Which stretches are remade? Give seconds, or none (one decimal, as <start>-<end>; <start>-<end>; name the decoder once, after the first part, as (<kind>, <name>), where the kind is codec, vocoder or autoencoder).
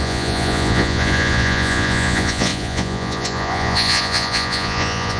0.0-5.2 (vocoder, Vocos)